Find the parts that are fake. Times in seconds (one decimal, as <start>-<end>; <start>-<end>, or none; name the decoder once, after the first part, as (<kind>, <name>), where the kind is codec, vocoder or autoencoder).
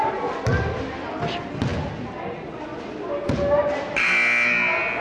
none